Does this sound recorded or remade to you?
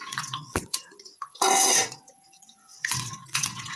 remade